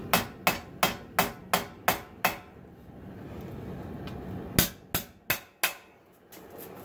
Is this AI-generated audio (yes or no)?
no